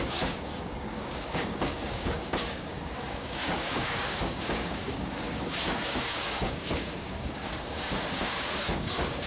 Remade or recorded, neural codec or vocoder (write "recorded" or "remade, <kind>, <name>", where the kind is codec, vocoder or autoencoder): remade, codec, DAC